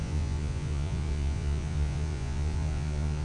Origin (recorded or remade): remade